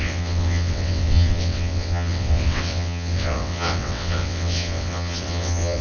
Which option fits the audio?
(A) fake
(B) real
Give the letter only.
A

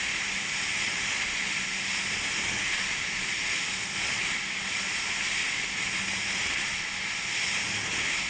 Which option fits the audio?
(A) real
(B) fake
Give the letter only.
A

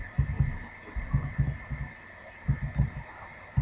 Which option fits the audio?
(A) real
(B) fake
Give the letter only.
A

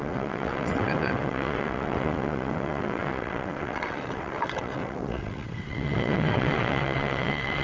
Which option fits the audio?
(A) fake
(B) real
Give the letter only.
A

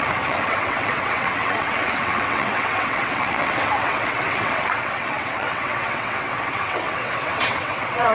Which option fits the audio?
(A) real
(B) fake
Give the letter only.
B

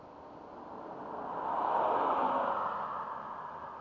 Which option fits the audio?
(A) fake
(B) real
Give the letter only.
B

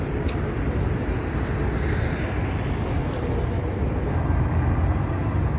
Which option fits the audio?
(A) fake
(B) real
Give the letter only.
B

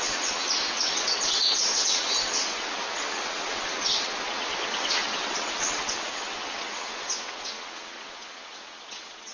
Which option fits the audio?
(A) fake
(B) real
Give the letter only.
A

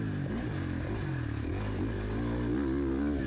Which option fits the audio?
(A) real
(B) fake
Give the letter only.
A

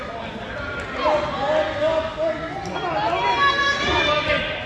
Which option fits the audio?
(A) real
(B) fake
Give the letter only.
A